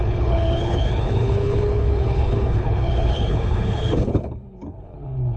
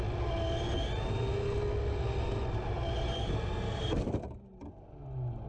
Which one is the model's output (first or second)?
first